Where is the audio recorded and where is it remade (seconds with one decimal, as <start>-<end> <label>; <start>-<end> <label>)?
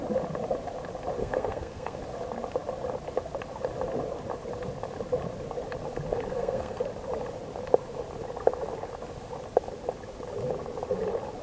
0.0-1.2 recorded; 1.2-2.0 remade; 2.0-6.3 recorded; 6.3-6.8 remade; 6.8-11.4 recorded